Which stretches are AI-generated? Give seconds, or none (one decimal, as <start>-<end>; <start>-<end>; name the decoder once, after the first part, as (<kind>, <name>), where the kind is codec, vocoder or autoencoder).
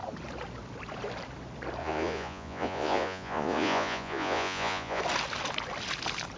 1.8-5.0 (vocoder, Vocos)